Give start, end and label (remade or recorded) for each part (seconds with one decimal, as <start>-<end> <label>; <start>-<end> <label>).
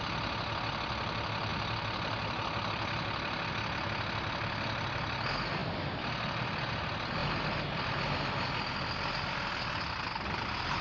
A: 0.0-10.8 recorded